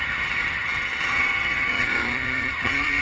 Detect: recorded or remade remade